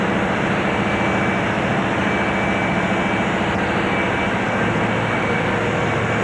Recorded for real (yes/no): yes